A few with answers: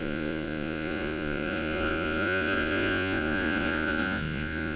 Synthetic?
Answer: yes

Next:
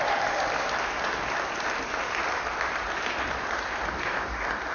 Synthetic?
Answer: no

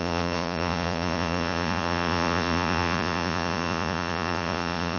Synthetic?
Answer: yes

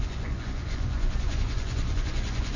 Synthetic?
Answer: yes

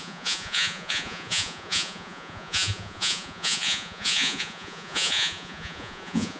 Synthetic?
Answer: yes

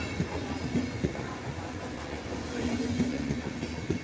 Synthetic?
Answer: yes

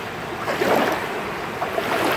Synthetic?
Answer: no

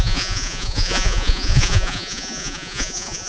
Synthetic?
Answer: yes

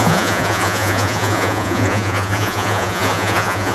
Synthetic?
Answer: yes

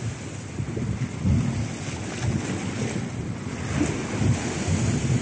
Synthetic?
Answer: no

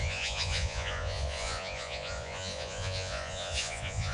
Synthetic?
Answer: yes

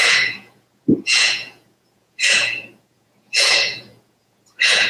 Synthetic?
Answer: yes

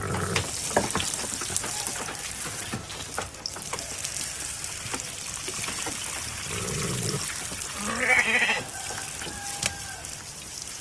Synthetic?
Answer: no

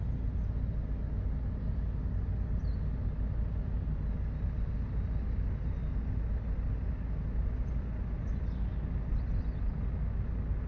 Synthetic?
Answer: no